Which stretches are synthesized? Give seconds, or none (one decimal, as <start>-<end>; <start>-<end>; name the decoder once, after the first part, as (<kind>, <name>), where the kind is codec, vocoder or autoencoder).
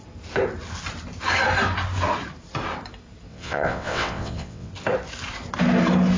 3.3-4.7 (vocoder, WaveNeXt)